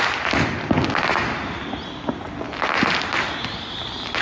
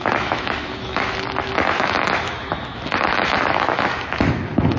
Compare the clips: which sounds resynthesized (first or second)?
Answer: second